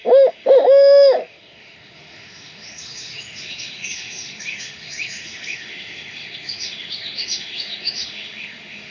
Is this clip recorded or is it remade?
remade